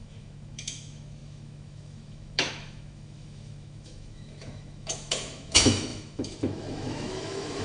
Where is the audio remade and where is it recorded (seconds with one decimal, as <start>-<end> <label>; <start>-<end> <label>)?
0.0-7.6 remade